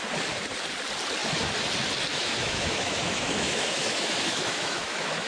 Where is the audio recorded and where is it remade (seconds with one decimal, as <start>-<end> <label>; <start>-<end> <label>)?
0.0-2.1 recorded; 2.1-5.3 remade